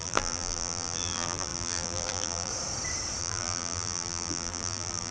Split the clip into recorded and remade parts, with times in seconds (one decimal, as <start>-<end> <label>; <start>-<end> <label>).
0.0-2.5 remade; 2.5-3.2 recorded; 3.2-5.1 remade